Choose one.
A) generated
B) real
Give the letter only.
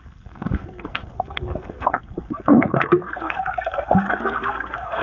A